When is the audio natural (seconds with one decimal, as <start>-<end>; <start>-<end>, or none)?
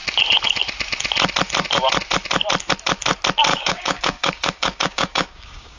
0.0-3.5